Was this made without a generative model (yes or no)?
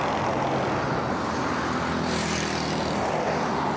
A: yes